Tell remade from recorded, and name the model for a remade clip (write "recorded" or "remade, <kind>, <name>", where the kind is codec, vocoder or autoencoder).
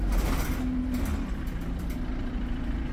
remade, vocoder, BigVGAN v2